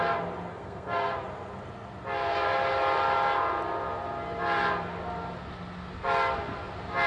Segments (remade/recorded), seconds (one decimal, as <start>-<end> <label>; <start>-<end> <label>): 0.0-0.5 recorded; 0.5-1.1 remade; 1.1-7.1 recorded